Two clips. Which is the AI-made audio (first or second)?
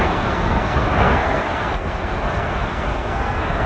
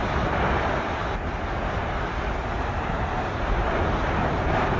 first